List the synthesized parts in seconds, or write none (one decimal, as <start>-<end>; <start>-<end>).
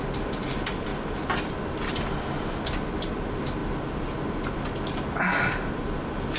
none